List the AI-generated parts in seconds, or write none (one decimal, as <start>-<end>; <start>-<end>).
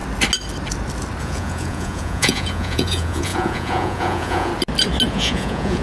1.2-4.5; 5.1-5.8